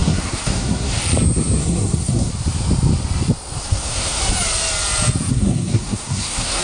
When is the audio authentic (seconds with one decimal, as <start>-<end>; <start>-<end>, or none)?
1.0-1.6; 2.3-3.6; 4.2-5.3

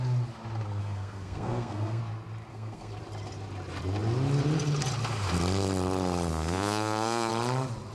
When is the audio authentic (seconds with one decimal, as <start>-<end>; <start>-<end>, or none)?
0.0-0.8; 2.0-2.5; 3.0-6.3; 7.3-7.9

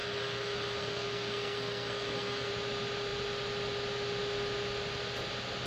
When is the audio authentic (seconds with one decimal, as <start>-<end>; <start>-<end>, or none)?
2.5-5.7

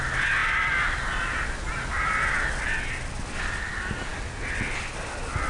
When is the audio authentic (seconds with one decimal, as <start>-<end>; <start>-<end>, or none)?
0.0-5.5